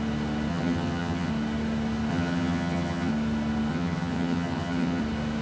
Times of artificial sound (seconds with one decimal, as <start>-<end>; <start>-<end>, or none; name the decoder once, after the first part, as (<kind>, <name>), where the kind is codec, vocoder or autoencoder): 0.5-1.3 (vocoder, HiFi-GAN); 2.1-3.1; 3.7-5.0